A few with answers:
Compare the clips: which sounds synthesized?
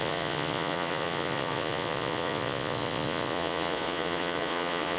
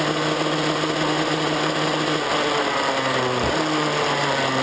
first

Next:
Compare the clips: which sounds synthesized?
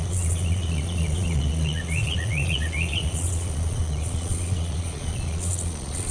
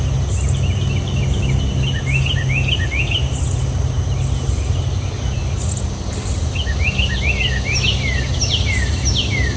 first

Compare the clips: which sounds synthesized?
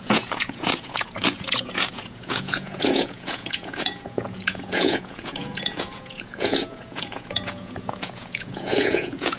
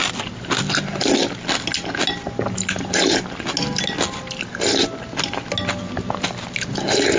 first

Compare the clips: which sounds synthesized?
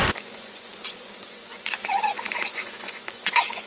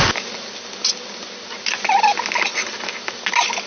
first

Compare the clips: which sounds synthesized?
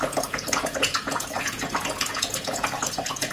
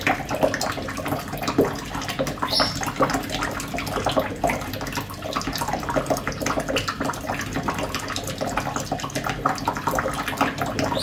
first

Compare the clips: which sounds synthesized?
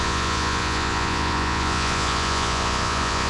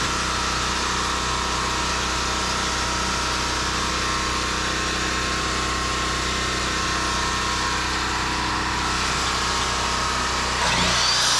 first